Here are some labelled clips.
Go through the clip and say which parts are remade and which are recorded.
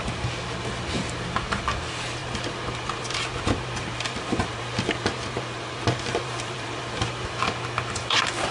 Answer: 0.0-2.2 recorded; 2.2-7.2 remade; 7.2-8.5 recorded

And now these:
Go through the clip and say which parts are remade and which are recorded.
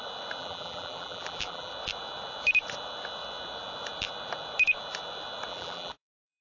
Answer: 0.0-0.4 recorded; 0.4-1.7 remade; 1.7-5.5 recorded; 5.5-6.4 remade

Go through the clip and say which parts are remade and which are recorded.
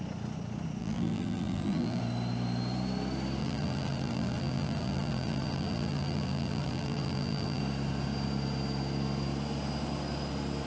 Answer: 0.0-0.8 recorded; 0.8-2.0 remade; 2.0-3.4 recorded; 3.4-7.6 remade; 7.6-10.7 recorded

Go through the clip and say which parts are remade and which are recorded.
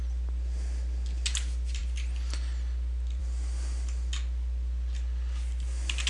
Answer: 0.0-6.1 recorded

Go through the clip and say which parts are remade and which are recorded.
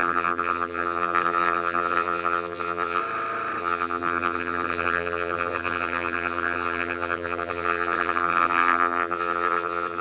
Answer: 0.0-3.0 remade; 3.0-3.6 recorded; 3.6-10.0 remade